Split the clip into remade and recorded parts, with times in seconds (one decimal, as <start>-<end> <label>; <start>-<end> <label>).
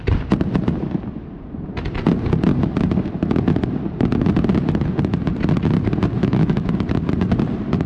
0.0-6.2 recorded; 6.2-6.7 remade; 6.7-7.9 recorded